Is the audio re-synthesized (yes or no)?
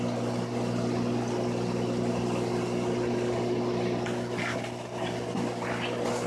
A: no